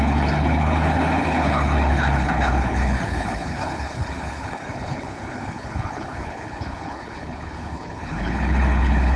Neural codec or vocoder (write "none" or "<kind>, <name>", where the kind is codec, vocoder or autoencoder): codec, HILCodec